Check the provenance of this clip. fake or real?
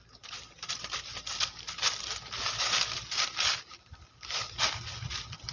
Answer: real